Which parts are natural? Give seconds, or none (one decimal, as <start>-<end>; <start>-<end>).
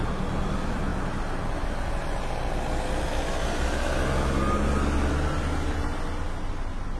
0.0-7.0